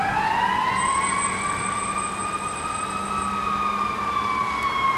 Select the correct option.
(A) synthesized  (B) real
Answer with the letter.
B